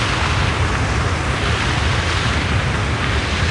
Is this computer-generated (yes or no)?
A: no